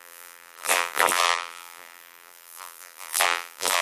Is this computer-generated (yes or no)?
yes